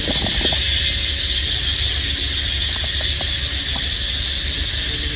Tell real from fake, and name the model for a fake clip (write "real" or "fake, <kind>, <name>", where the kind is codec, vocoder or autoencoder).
real